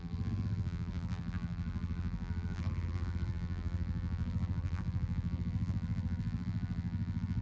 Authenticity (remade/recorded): remade